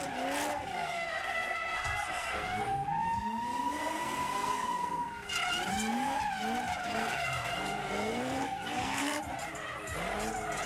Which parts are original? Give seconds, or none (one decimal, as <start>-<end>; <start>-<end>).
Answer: 0.0-0.5; 5.3-5.7; 6.2-6.8; 9.2-10.7